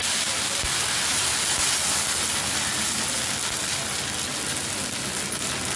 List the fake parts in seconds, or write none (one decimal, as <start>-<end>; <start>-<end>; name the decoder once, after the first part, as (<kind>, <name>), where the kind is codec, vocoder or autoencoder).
none